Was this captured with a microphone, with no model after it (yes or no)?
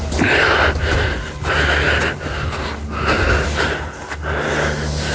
yes